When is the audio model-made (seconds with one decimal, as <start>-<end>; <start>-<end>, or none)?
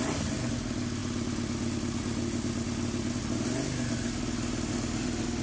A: none